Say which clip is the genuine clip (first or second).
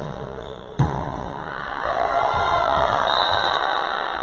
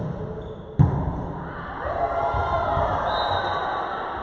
second